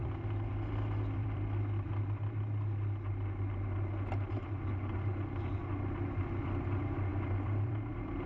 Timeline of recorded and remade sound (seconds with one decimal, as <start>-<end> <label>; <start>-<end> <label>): 0.0-1.9 remade; 1.9-6.2 recorded; 6.2-8.3 remade